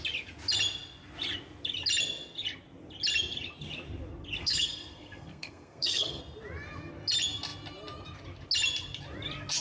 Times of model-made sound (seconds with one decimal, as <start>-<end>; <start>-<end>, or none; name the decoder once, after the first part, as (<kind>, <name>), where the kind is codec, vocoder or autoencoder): 4.4-6.2 (codec, SNAC)